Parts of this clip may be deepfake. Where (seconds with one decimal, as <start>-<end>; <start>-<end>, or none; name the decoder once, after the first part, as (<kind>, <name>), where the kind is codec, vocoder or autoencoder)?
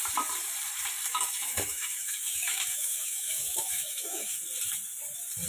1.1-4.4 (autoencoder, DAC-VAE)